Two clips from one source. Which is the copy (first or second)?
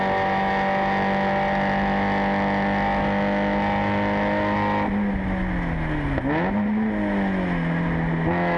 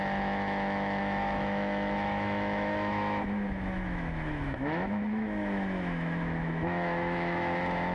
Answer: second